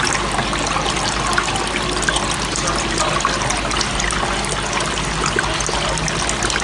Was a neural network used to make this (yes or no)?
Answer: no